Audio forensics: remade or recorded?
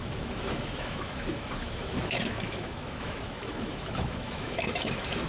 remade